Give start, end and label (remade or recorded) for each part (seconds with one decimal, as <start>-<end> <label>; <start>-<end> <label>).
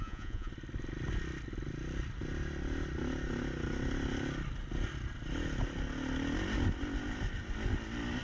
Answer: 0.0-0.5 remade; 0.5-8.2 recorded